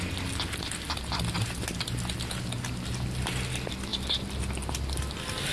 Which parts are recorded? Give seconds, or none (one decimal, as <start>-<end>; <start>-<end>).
0.0-5.5